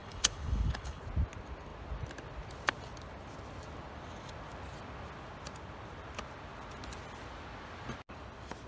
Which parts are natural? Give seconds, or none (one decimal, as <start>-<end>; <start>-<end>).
1.0-8.7